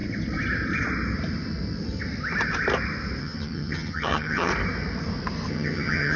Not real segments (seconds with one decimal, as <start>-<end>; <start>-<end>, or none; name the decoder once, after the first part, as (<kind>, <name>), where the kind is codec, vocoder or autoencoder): 3.2-4.5 (vocoder, HiFi-GAN); 5.5-6.2